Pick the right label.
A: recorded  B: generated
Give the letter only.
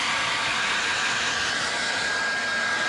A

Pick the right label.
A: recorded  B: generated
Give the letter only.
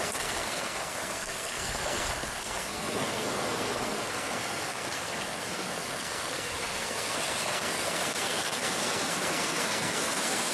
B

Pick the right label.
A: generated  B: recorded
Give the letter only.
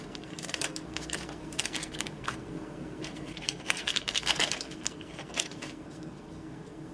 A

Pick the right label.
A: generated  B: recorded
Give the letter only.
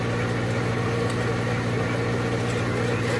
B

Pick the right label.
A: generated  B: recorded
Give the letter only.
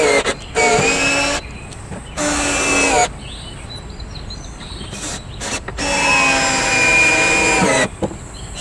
B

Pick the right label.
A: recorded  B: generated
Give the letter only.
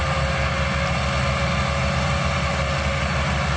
A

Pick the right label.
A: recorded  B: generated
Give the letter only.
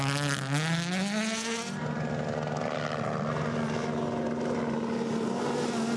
A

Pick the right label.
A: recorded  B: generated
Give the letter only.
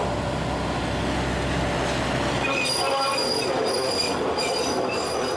A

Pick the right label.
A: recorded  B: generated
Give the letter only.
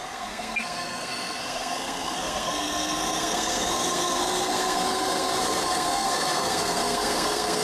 B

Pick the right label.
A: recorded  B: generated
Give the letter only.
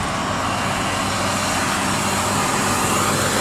A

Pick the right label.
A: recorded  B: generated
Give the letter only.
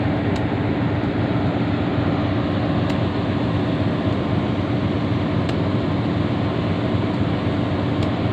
A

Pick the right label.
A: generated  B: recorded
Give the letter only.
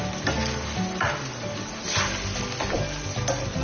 B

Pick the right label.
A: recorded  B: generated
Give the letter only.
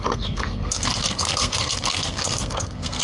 B